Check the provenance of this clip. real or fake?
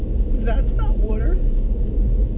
real